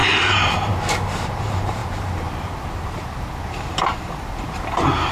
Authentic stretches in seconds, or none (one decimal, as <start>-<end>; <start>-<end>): 0.0-0.7